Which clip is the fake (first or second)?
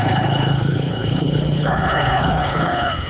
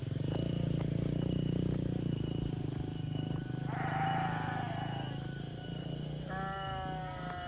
first